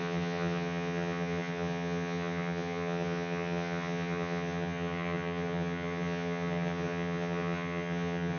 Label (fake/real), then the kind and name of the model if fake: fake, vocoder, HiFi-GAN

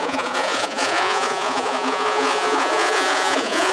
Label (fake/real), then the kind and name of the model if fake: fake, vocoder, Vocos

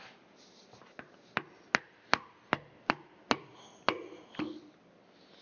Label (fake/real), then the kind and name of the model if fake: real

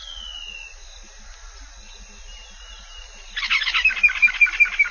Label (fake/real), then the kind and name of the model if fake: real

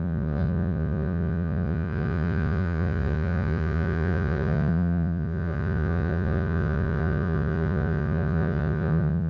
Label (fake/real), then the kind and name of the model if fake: fake, vocoder, Vocos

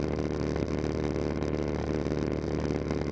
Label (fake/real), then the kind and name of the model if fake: real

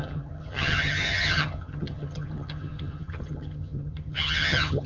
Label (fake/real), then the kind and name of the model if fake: fake, vocoder, HiFi-GAN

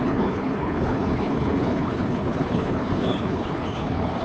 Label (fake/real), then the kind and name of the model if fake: fake, codec, HILCodec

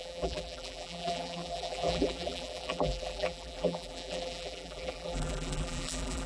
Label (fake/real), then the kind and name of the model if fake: fake, vocoder, BigVGAN v2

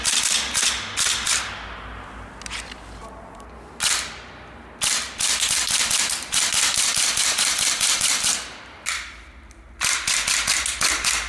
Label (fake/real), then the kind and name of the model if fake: real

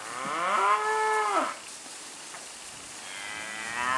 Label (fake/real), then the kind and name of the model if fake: real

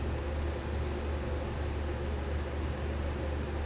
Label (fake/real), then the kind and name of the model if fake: real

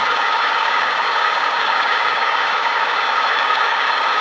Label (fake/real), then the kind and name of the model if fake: fake, codec, DAC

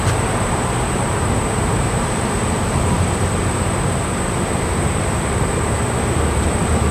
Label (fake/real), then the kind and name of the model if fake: fake, vocoder, BigVGAN v2